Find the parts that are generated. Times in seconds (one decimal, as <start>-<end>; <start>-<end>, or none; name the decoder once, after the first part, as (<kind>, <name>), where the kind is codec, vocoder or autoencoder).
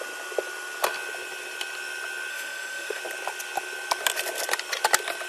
2.3-3.0 (autoencoder, DAC-VAE)